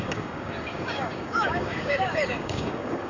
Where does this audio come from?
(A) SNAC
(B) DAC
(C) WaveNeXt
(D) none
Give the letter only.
B